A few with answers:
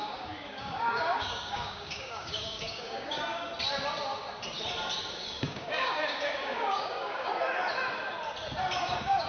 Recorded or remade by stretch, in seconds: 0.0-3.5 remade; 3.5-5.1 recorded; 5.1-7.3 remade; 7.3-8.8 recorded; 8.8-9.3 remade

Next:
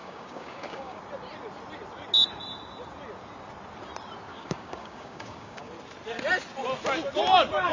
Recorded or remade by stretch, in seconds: 0.0-1.0 remade; 1.0-4.3 recorded; 4.3-5.7 remade; 5.7-7.7 recorded

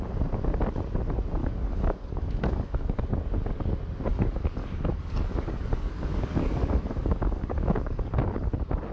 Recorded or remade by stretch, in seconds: 0.0-1.4 recorded; 1.4-3.0 remade; 3.0-4.1 recorded; 4.1-8.5 remade; 8.5-8.9 recorded

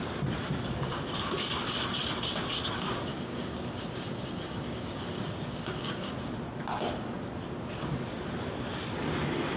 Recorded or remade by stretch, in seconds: 0.0-3.1 recorded; 3.1-6.1 remade; 6.1-9.6 recorded